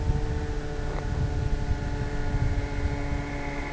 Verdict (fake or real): real